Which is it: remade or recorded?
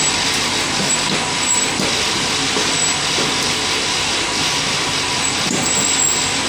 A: recorded